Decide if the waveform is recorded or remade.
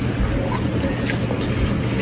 recorded